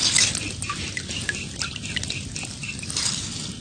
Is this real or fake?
real